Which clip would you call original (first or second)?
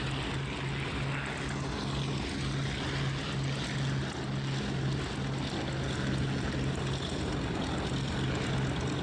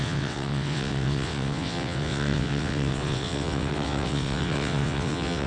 first